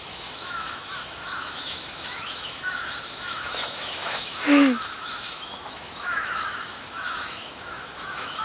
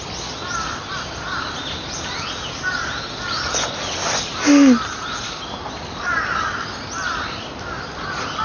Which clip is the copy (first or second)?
first